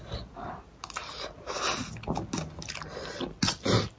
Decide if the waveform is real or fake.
real